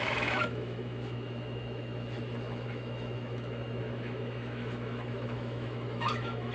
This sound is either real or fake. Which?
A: fake